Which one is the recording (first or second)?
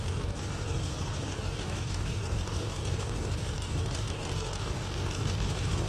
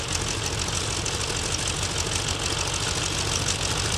second